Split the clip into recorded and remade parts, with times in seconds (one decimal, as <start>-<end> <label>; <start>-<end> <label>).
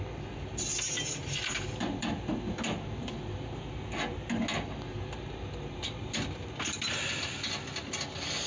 0.0-8.5 recorded